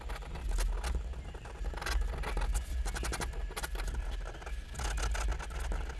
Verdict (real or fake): real